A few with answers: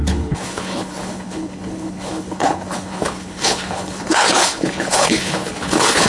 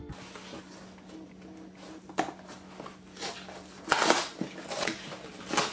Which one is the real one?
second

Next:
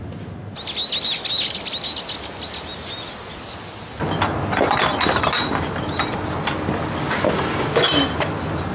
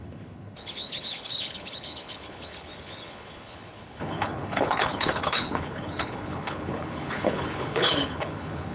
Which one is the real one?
first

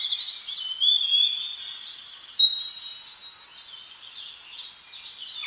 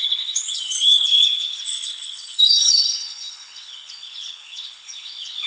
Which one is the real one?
first